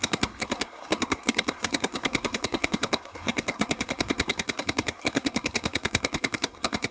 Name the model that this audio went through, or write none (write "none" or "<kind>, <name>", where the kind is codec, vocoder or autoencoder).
codec, SNAC